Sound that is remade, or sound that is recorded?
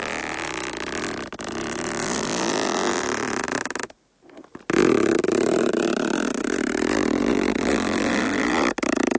recorded